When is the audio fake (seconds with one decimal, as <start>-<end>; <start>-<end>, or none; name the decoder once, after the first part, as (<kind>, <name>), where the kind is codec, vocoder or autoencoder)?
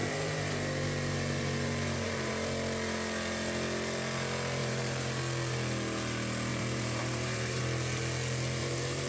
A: 0.0-2.3 (vocoder, BigVGAN v2); 4.6-5.2; 6.5-7.6; 8.6-9.1